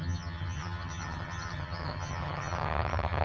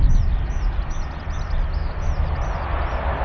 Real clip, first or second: second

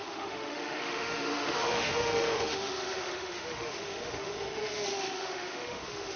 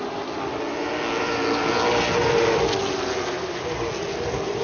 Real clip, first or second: second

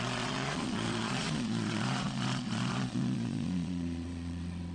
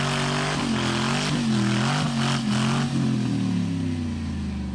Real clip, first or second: second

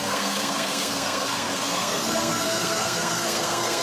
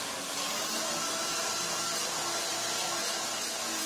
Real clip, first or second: second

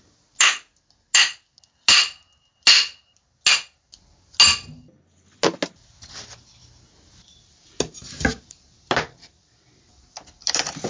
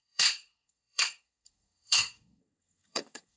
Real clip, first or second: first